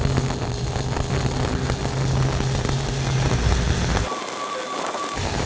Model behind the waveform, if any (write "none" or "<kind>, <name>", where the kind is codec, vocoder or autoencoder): none